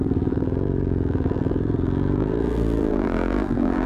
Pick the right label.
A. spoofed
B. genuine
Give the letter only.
A